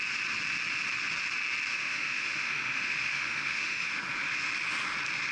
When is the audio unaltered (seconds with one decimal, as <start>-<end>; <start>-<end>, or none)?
0.0-1.7; 4.0-5.3